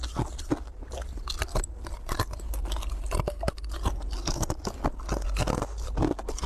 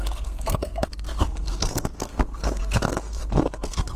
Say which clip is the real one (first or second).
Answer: first